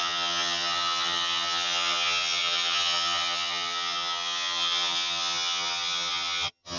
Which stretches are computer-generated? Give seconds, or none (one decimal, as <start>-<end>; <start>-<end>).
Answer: 0.0-6.8